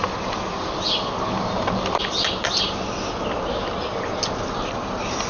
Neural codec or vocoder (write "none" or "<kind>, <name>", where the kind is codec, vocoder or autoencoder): none